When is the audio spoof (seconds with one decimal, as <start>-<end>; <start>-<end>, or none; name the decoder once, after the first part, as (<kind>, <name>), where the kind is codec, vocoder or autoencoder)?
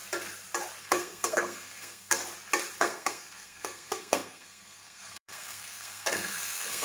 0.8-2.2 (codec, SNAC); 2.8-6.8